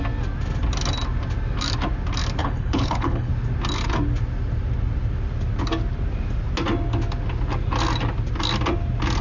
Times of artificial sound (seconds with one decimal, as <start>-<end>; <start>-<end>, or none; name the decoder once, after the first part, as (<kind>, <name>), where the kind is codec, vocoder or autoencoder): 2.4-3.3 (codec, HILCodec)